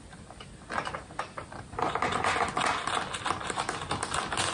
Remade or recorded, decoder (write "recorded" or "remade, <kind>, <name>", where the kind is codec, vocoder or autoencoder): recorded